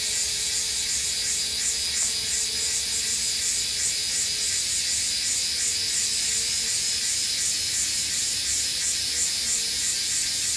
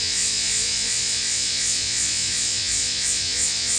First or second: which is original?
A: first